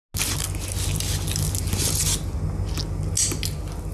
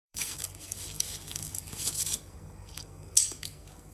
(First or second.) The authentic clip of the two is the first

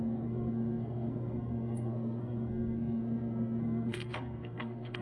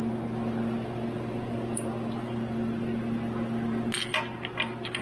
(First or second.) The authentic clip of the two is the second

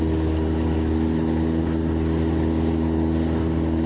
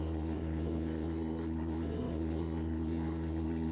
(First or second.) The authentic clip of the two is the first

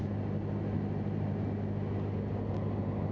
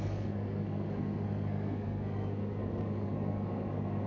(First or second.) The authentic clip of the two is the first